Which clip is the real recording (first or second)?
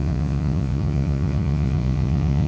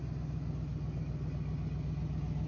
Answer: second